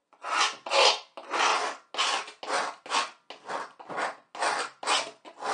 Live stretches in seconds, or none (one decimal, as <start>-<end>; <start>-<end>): 0.7-5.5